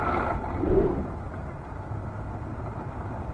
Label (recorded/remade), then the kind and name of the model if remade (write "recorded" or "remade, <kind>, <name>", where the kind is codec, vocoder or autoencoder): recorded